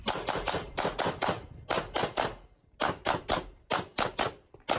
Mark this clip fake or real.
real